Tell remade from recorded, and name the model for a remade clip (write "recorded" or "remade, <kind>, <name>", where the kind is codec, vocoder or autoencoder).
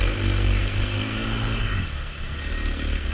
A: remade, codec, SNAC